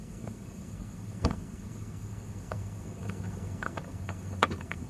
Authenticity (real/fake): fake